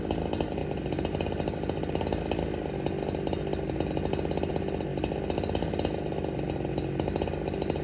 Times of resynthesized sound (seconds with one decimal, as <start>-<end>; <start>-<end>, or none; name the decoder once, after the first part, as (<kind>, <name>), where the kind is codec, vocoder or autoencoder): none